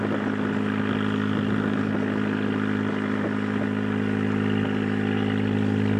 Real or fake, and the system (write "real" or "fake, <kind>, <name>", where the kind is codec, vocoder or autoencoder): real